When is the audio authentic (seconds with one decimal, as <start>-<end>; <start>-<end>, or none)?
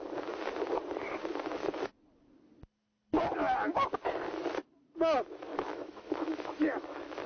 0.0-5.5